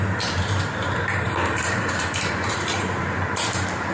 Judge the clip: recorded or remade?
remade